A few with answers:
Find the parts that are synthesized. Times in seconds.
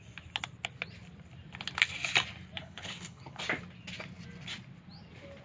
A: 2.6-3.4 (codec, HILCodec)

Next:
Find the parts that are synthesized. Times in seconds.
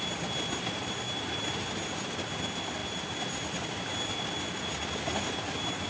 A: none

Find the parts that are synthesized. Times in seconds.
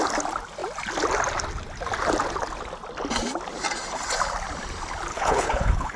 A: 5.1-6.0 (codec, HILCodec)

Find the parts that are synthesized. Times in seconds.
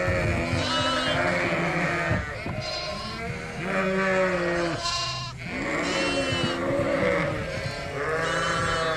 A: none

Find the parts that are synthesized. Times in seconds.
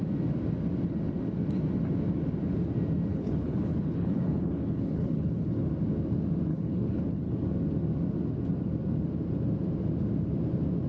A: 3.1-5.7 (codec, HILCodec); 6.5-7.3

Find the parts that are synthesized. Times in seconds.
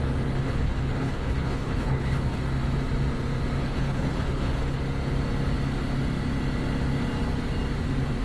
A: 0.4-2.4 (codec, HILCodec); 3.6-4.8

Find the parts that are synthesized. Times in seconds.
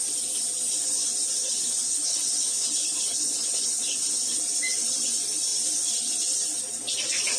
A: 1.4-4.4 (codec, HILCodec)